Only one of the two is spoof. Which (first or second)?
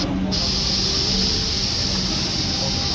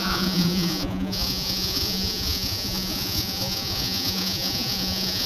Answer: second